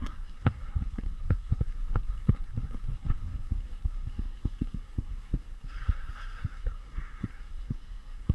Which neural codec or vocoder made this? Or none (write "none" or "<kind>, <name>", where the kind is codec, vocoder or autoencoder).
codec, SNAC